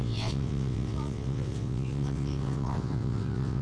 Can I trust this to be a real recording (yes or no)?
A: no